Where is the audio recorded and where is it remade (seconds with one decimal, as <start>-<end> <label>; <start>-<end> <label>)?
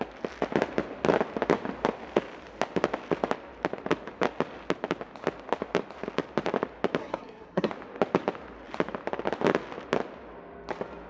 0.0-7.0 recorded; 7.0-7.7 remade; 7.7-11.1 recorded